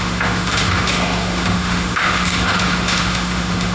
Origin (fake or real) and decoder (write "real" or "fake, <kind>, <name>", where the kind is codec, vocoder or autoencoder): fake, autoencoder, DAC-VAE